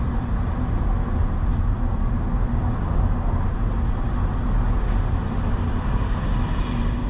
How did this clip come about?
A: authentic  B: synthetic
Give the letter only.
A